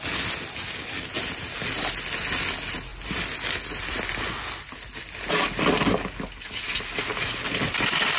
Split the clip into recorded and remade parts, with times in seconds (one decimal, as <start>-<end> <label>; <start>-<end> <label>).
0.0-8.2 recorded